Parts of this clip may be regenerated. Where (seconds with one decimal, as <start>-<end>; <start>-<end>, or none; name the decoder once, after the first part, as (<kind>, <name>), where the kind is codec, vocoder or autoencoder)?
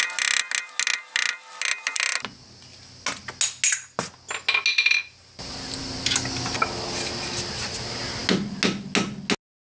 none